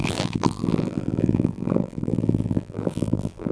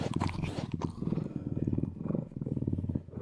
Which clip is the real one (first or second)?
second